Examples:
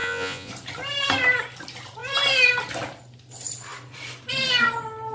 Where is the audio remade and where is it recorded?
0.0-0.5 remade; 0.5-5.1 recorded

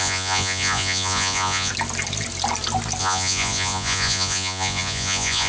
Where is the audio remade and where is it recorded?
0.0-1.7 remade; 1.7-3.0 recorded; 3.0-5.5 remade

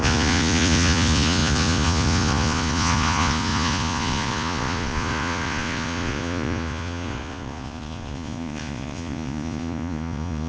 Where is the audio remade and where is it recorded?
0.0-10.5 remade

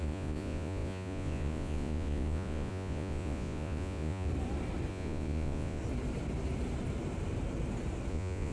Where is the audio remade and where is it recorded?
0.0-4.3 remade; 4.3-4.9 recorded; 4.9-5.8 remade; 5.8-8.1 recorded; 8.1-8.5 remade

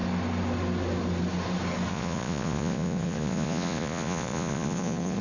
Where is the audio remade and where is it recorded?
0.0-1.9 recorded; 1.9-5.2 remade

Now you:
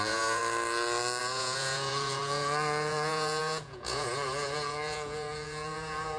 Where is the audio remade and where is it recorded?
0.0-0.4 remade; 0.4-1.2 recorded; 1.2-6.2 remade